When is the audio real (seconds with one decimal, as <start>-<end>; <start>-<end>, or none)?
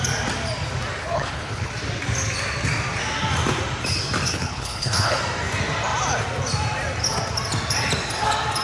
0.0-1.0; 1.7-4.3; 5.2-8.6